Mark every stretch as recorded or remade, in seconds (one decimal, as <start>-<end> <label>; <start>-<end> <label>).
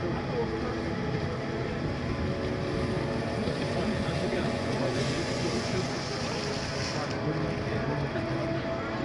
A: 0.0-3.4 recorded; 3.4-6.4 remade; 6.4-9.0 recorded